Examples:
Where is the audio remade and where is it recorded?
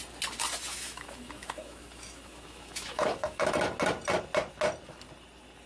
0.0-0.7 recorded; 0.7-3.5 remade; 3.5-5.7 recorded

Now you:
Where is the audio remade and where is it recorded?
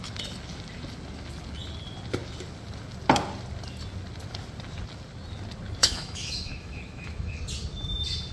0.0-5.8 recorded; 5.8-7.4 remade; 7.4-8.3 recorded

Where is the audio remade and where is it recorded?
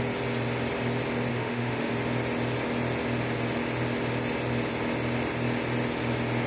0.0-1.3 recorded; 1.3-1.9 remade; 1.9-6.5 recorded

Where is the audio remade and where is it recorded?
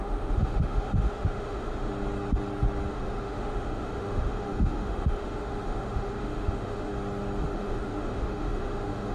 0.0-1.9 remade; 1.9-2.9 recorded; 2.9-6.9 remade; 6.9-7.4 recorded; 7.4-9.1 remade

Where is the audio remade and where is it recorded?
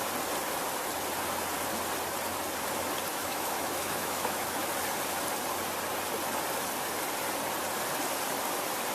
0.0-3.1 recorded; 3.1-4.7 remade; 4.7-8.9 recorded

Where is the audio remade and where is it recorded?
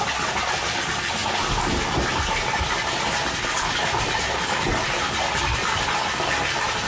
0.0-6.9 recorded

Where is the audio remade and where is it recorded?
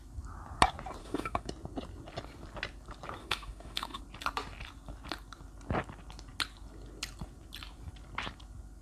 0.0-1.0 recorded; 1.0-1.5 remade; 1.5-3.2 recorded; 3.2-4.0 remade; 4.0-8.8 recorded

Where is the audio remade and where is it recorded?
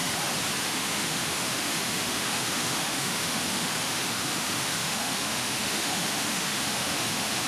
0.0-0.6 recorded; 0.6-7.5 remade